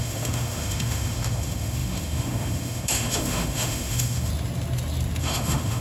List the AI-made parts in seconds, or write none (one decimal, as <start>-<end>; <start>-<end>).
0.0-4.3; 5.2-5.8